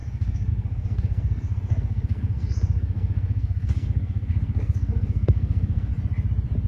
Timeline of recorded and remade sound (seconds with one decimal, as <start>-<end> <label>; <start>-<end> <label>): 0.0-5.9 remade; 5.9-6.7 recorded